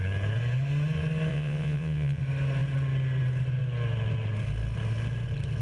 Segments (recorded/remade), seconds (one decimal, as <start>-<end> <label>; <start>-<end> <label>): 0.0-1.3 recorded; 1.3-2.2 remade; 2.2-5.6 recorded